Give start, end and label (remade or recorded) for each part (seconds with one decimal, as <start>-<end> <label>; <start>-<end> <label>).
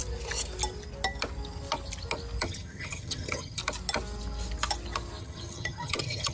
0.0-2.4 recorded; 2.4-3.6 remade; 3.6-5.2 recorded; 5.2-6.3 remade